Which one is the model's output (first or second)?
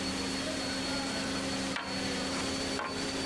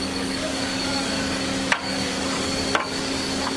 second